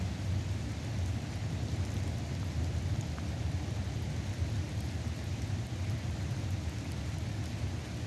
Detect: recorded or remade recorded